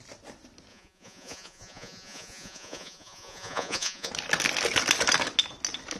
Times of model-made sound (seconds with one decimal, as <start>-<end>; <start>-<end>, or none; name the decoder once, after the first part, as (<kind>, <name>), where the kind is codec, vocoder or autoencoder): 0.7-4.1 (vocoder, Vocos)